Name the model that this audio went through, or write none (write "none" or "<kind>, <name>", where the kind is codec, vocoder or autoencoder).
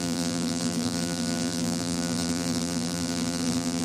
vocoder, BigVGAN v2